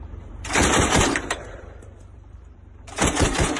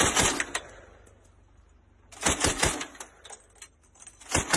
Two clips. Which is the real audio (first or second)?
second